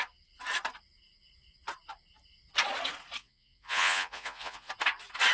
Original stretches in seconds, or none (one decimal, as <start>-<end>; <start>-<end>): 0.0-3.2; 4.7-5.3